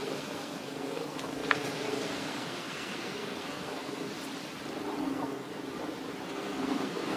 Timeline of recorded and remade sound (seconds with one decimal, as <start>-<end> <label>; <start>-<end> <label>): 0.0-4.1 remade; 4.1-5.0 recorded; 5.0-5.5 remade; 5.5-6.2 recorded; 6.2-7.2 remade